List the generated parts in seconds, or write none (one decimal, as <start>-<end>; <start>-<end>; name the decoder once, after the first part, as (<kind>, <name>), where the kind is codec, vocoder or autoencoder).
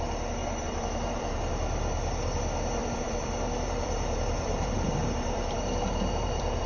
0.4-1.5 (vocoder, BigVGAN v2); 2.8-6.7